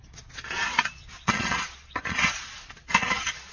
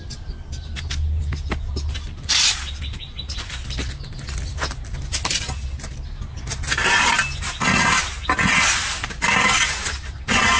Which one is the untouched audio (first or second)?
second